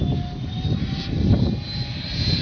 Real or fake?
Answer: real